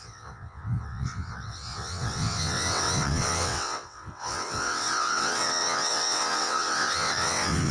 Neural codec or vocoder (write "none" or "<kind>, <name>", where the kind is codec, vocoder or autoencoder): vocoder, WaveNeXt